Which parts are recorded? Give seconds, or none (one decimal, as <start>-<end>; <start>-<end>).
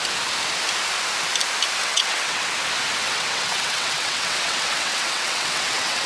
0.0-1.8; 2.5-3.0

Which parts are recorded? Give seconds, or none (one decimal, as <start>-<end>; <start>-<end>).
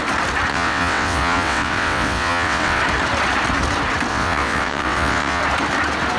0.0-0.5; 2.8-4.1; 5.4-6.2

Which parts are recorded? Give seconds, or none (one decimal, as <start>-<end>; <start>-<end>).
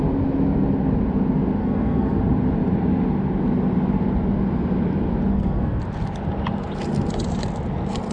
0.0-1.6; 2.2-5.3; 5.8-8.1